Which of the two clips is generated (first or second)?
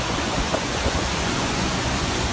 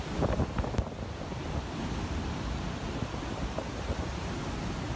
first